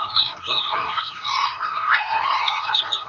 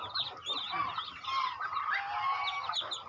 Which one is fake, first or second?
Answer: first